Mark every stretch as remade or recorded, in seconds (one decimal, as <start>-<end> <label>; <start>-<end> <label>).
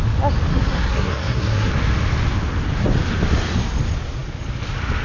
0.0-0.5 recorded; 0.5-1.7 remade; 1.7-5.0 recorded